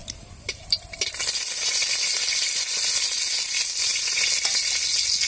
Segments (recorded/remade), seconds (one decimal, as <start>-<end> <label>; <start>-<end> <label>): 0.0-5.3 recorded